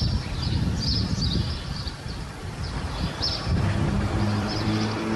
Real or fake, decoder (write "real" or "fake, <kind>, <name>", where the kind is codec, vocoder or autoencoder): fake, vocoder, BigVGAN v2